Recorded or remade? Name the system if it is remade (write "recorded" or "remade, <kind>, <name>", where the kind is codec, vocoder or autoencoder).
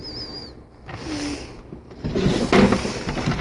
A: recorded